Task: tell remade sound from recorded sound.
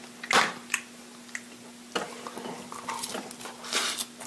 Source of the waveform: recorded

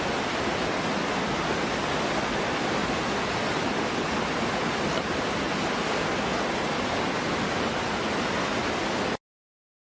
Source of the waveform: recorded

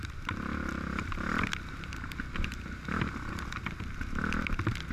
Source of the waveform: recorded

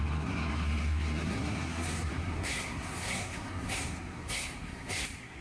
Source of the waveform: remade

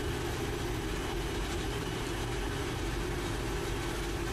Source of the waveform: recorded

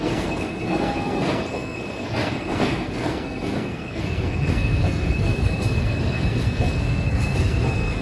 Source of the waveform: remade